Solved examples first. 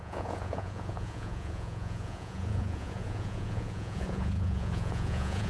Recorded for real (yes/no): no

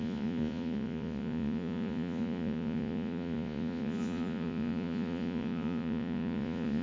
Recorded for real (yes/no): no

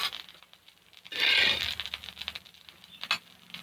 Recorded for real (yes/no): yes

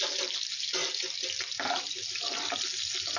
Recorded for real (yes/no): yes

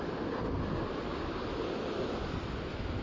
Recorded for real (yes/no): yes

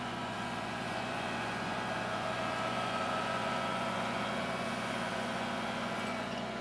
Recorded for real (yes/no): no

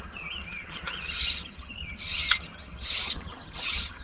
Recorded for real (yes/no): no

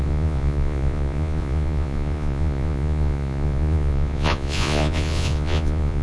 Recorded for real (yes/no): no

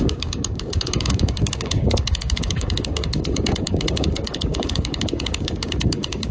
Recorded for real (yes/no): no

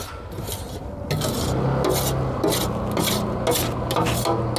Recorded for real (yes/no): yes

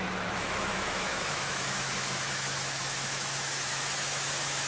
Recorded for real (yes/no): no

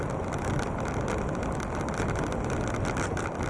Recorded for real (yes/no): yes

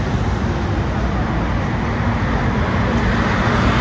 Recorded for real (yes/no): yes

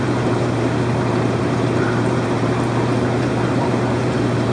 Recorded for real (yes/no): no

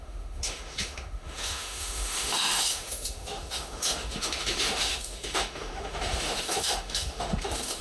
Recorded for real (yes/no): no